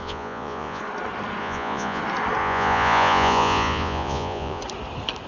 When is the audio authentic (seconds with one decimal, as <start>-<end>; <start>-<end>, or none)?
0.8-1.4; 2.0-2.4; 4.6-5.3